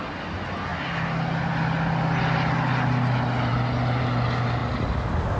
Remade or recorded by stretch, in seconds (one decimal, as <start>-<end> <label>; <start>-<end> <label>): 0.0-5.4 recorded